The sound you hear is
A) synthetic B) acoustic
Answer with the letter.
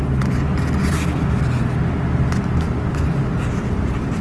B